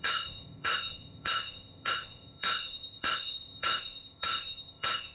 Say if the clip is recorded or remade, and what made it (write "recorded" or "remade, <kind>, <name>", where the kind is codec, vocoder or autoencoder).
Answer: remade, codec, ZipCodec